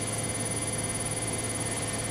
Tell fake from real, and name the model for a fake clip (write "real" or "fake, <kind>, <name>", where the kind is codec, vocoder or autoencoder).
real